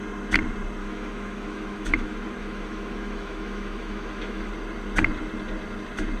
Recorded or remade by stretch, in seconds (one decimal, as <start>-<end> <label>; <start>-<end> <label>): 0.0-0.8 recorded; 0.8-4.5 remade; 4.5-6.2 recorded